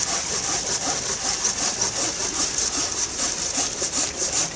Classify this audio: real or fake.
real